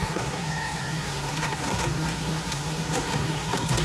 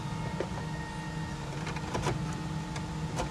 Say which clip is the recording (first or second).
second